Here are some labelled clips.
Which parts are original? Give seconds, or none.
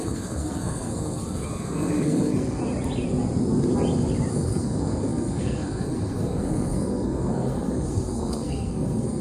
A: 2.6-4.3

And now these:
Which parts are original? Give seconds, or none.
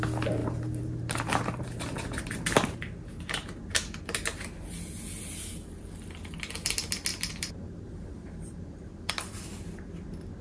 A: 0.0-0.4; 2.2-7.1; 9.1-10.4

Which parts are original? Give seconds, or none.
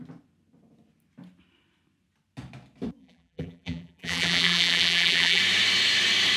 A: 0.0-3.0; 5.4-6.4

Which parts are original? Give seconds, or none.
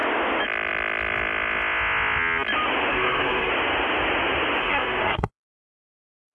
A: 0.0-2.9; 3.5-4.6; 5.3-6.3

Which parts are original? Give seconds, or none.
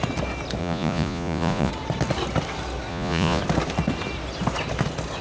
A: 0.0-0.6; 1.7-2.9; 3.4-5.2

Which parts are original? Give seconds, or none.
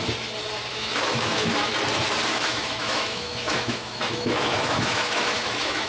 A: 0.0-0.7; 1.7-2.3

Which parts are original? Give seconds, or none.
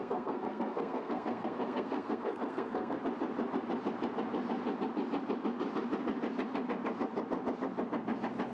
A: 3.0-8.5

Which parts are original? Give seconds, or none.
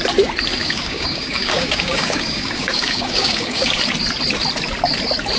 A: 0.0-0.6; 3.8-5.4